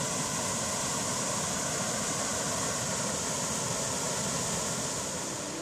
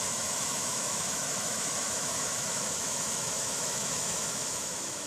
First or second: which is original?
first